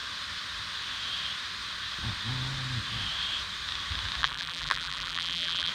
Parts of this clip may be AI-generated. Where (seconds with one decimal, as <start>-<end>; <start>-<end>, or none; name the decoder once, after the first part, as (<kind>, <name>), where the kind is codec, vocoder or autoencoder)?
4.2-5.7 (vocoder, BigVGAN v2)